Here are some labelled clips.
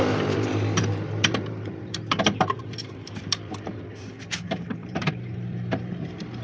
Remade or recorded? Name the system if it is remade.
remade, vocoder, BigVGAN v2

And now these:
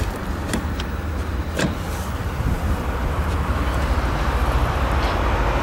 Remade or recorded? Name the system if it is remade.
remade, vocoder, BigVGAN v2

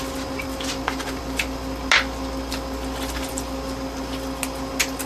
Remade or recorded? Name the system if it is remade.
recorded